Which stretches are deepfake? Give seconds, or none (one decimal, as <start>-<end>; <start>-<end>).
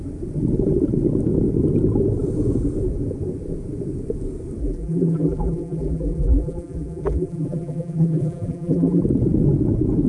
4.6-9.0